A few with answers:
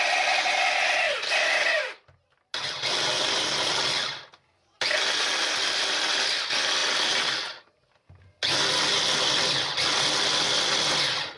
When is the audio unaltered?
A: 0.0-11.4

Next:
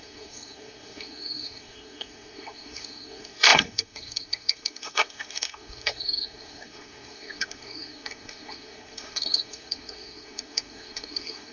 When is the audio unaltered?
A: none

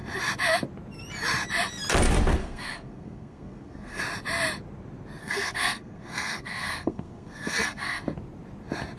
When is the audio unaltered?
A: 0.0-2.4; 4.0-5.2; 8.0-9.0

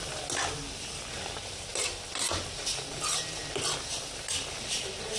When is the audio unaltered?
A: 0.0-5.2

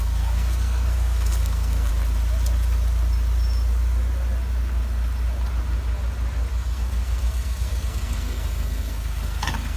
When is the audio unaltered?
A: 1.9-6.5

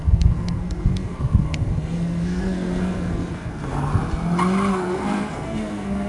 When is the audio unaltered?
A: 3.9-4.7

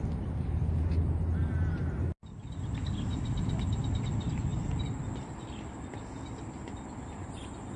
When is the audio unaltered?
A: 0.0-7.8

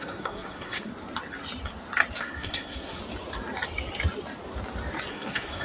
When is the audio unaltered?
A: 0.9-2.2; 3.0-5.1